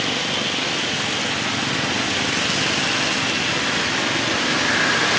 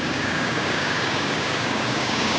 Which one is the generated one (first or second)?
second